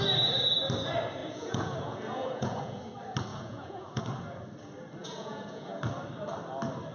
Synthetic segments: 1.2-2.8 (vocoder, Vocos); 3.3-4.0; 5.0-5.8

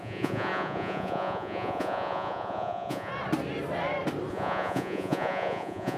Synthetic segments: 0.0-3.1 (vocoder, Vocos); 4.3-6.0

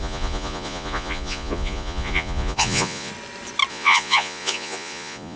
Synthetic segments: 0.0-3.1 (vocoder, Vocos); 3.7-5.4

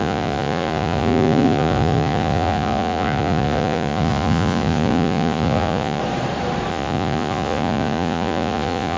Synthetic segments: 0.0-6.0 (vocoder, Vocos); 6.7-9.0

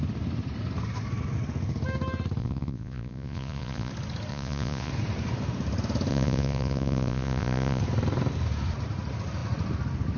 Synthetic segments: 2.4-3.9 (vocoder, Vocos); 4.3-4.9; 6.1-7.8

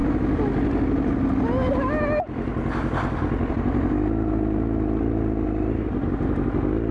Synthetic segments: none